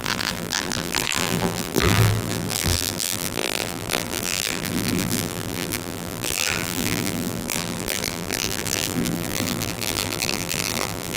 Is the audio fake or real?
fake